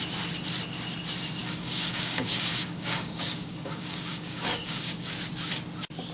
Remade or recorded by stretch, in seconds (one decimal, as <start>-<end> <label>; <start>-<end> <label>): 0.0-1.4 recorded; 1.4-5.1 remade; 5.1-6.1 recorded